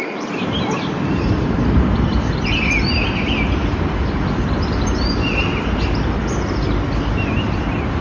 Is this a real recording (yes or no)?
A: yes